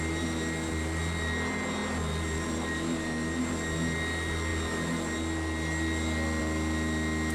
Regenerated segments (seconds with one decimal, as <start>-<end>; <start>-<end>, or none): none